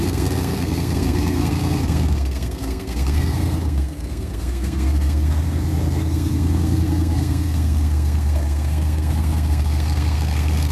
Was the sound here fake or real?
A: fake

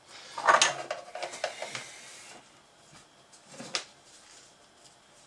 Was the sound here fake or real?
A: real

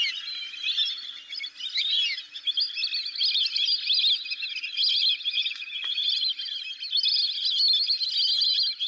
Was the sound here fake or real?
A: real